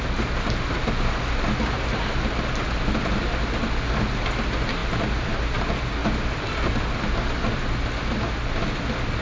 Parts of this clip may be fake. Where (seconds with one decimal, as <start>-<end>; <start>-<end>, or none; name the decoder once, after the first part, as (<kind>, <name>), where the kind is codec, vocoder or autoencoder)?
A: 6.0-7.1 (vocoder, BigVGAN v2)